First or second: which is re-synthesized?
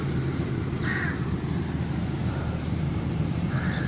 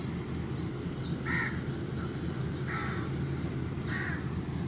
first